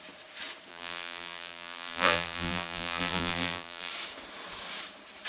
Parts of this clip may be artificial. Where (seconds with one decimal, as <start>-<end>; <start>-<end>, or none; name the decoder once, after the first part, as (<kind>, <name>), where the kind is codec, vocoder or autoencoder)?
0.7-3.9 (vocoder, BigVGAN v2)